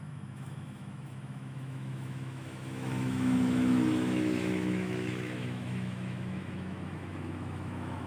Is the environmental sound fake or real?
fake